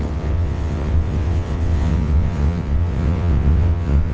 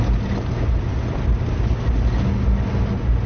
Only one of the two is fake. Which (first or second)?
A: first